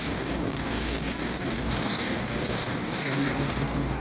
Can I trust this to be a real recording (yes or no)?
no